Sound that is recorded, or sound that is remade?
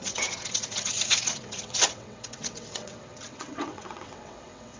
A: remade